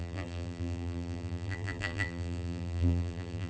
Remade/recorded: remade